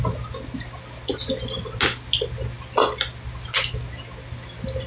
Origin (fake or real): real